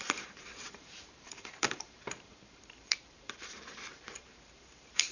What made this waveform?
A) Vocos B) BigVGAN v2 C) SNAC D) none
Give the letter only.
B